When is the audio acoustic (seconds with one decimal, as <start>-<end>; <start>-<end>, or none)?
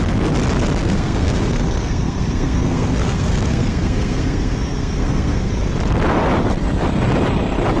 0.0-0.8; 5.5-7.8